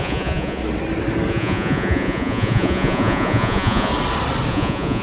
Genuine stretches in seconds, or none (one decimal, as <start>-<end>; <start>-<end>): 0.6-1.3; 3.9-4.5